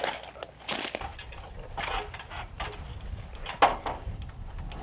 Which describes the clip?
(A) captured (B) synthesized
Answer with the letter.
A